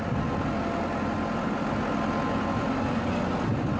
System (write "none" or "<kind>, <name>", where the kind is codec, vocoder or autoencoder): none